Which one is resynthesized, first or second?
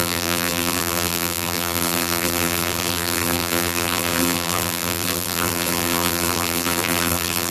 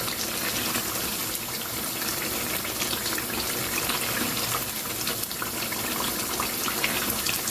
first